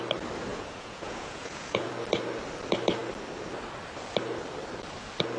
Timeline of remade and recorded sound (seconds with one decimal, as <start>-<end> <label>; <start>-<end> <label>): 0.0-0.5 recorded; 0.5-1.9 remade; 1.9-5.4 recorded